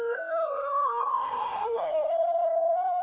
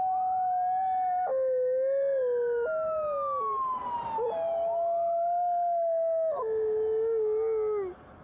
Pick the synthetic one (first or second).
first